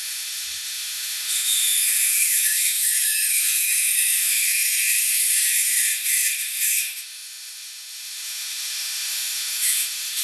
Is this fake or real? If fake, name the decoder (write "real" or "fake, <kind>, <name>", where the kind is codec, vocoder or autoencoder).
fake, autoencoder, DAC-VAE